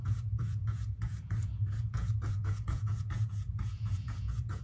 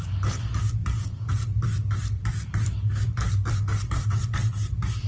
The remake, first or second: first